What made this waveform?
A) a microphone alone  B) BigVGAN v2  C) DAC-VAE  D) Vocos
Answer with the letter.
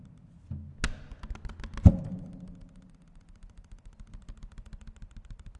A